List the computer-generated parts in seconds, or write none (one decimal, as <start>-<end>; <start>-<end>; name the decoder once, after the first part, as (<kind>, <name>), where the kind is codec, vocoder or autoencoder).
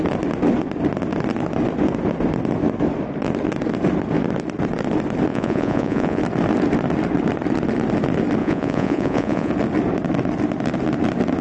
5.3-6.2 (vocoder, Vocos); 8.4-9.5